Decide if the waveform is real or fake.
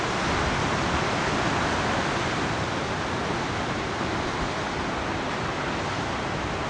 real